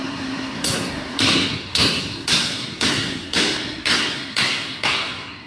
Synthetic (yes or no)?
yes